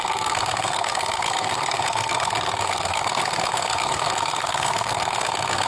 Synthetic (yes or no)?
yes